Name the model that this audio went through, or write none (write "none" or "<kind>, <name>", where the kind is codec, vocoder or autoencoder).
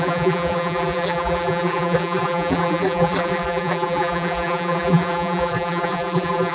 vocoder, BigVGAN v2